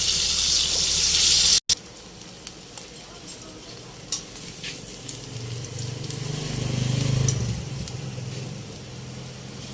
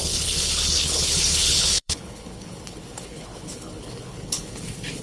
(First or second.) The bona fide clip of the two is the first